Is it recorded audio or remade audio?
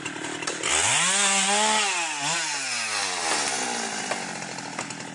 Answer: recorded